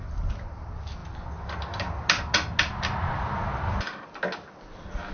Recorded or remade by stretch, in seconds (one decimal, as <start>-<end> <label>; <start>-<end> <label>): 0.0-5.1 recorded